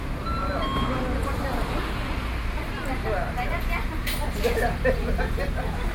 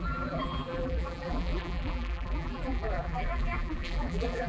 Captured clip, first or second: first